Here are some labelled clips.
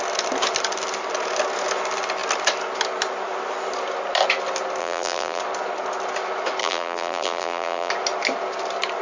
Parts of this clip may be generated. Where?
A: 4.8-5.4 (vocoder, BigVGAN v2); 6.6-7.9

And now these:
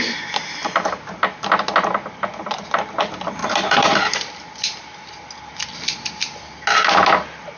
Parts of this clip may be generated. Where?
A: 0.6-1.2 (vocoder, BigVGAN v2); 3.4-4.2

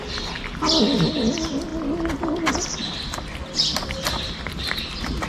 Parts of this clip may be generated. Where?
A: none

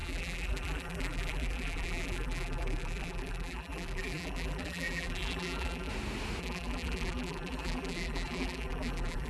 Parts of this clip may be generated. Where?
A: 0.0-5.9 (vocoder, BigVGAN v2); 6.4-9.3

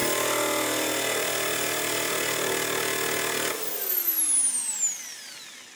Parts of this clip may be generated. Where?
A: none